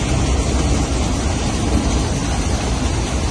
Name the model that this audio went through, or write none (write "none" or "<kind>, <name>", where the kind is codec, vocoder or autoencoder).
none